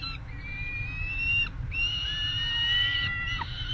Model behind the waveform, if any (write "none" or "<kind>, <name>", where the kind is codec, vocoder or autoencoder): none